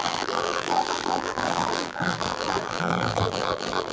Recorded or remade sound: remade